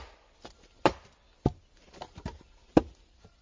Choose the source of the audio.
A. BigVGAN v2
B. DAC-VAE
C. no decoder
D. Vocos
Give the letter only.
C